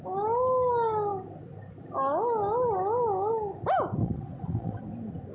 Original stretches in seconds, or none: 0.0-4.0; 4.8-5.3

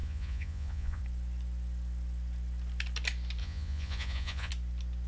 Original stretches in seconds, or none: 1.0-3.4; 4.5-5.1